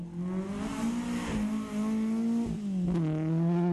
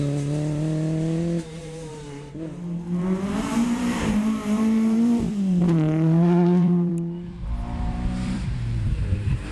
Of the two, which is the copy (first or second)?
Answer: second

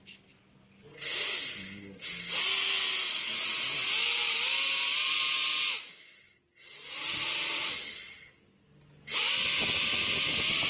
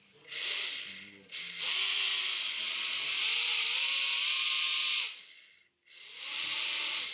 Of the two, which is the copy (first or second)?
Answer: second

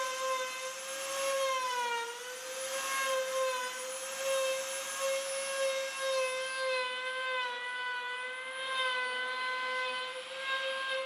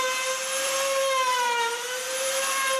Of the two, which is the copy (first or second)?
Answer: second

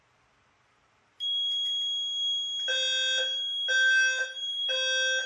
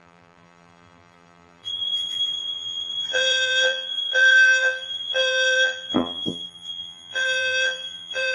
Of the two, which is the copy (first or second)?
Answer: second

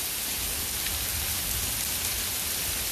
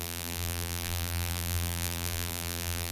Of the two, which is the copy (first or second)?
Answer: second